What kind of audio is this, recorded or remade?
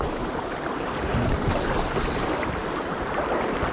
recorded